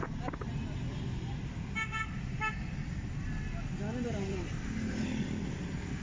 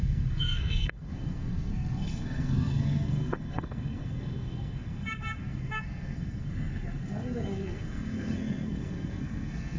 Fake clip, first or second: second